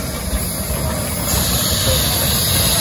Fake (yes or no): no